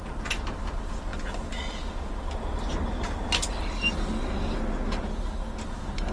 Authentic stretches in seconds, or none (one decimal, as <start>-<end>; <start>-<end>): 0.0-6.1